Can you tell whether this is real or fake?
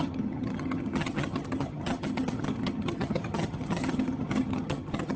fake